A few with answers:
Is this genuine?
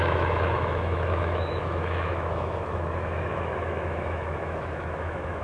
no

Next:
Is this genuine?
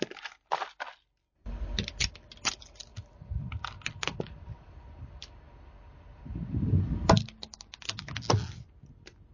yes